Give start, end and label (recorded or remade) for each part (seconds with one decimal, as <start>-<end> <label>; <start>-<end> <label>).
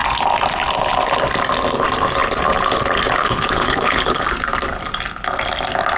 0.0-3.2 recorded; 3.2-4.2 remade; 4.2-6.0 recorded